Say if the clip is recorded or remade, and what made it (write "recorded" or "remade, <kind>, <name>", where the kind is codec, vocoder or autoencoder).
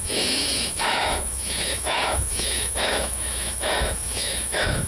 remade, autoencoder, DAC-VAE